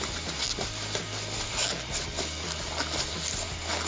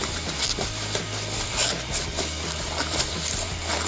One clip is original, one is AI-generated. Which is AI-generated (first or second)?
second